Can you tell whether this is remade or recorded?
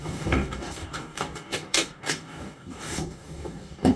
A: remade